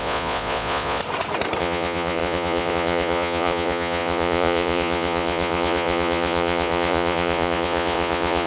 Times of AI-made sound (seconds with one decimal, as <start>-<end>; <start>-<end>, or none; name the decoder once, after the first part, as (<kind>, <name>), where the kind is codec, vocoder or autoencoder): 0.0-1.0 (vocoder, Vocos); 1.6-8.5

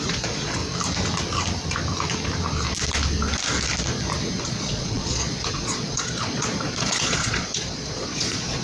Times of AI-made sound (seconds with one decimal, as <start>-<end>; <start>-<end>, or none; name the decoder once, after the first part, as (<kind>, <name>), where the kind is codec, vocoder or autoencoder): 0.0-0.6 (vocoder, Vocos); 4.4-8.6

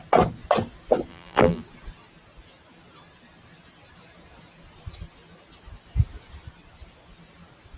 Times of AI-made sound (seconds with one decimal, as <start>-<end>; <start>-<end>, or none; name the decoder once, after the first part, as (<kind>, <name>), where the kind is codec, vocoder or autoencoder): 1.1-1.6 (vocoder, BigVGAN v2)

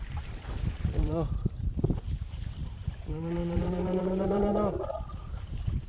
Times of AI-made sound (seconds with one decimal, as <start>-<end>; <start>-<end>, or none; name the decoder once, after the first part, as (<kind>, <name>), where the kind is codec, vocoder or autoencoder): 0.0-4.5 (vocoder, BigVGAN v2); 5.4-5.9

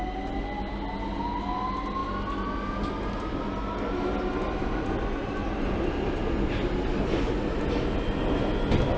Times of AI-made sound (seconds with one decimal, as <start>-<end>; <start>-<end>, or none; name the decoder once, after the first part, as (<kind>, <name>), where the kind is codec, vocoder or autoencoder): none

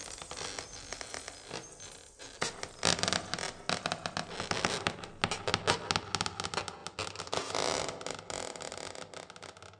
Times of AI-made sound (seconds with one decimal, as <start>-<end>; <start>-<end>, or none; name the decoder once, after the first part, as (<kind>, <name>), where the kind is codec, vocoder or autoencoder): none